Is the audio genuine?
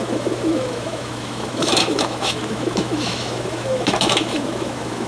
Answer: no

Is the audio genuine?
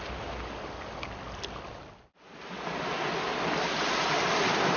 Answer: yes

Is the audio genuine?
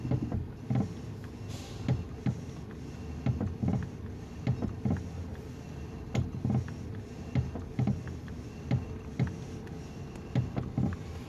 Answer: yes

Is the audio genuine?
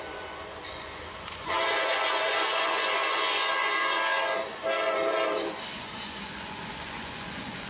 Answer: no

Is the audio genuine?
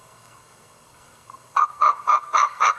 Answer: no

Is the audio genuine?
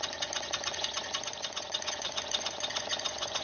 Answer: no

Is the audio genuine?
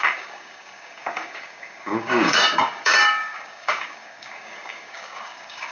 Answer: no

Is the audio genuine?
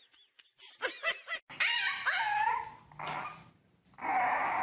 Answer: yes